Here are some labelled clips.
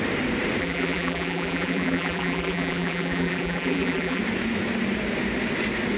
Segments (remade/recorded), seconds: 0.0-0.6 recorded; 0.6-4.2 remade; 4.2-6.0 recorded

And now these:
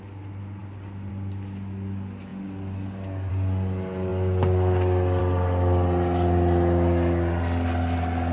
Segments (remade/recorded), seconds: 0.0-8.3 recorded

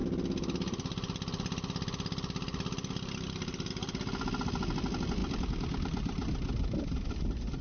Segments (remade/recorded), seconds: 0.0-7.6 recorded

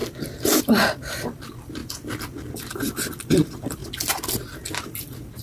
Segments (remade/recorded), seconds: 0.0-3.8 remade; 3.8-4.8 recorded; 4.8-5.4 remade

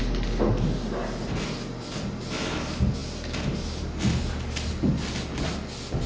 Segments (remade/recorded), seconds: 0.0-6.1 recorded

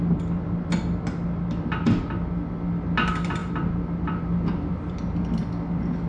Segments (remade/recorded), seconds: 0.0-6.1 recorded

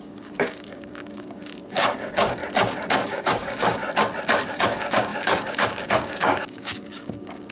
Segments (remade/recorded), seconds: 0.0-2.4 remade; 2.4-2.9 recorded; 2.9-3.8 remade; 3.8-4.5 recorded; 4.5-7.5 remade

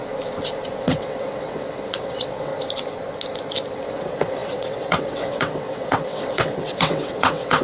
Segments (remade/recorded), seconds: 0.0-0.8 recorded; 0.8-2.5 remade; 2.5-3.7 recorded; 3.7-7.6 remade